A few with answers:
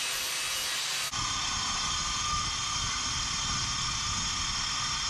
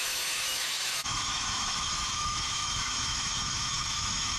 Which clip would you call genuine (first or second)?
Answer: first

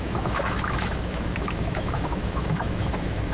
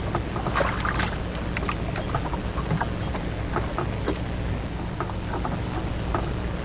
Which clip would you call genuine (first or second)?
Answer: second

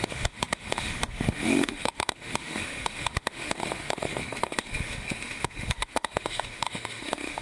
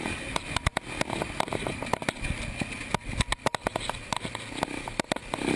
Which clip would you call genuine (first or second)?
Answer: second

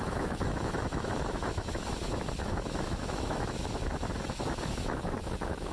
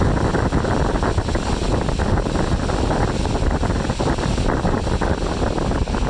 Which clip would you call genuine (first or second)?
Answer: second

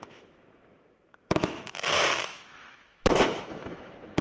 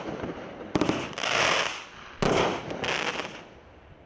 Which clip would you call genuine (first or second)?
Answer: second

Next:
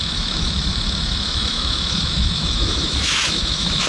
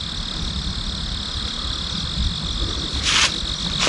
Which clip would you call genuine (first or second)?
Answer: second